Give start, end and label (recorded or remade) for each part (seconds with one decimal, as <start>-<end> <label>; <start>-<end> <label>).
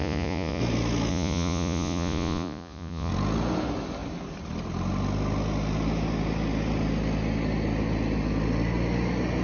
0.0-0.6 remade; 0.6-1.1 recorded; 1.1-3.1 remade; 3.1-9.4 recorded